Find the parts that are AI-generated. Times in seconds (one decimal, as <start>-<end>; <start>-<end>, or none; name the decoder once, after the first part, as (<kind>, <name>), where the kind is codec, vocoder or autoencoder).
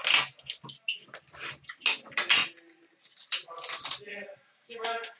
4.1-5.2 (autoencoder, DAC-VAE)